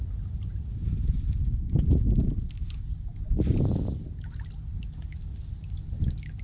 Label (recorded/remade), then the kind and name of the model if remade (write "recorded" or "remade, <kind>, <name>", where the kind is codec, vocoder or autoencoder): recorded